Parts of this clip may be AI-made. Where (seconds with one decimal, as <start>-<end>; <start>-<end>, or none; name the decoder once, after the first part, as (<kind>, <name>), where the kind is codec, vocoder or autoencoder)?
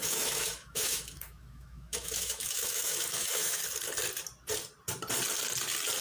0.0-3.6 (autoencoder, DAC-VAE)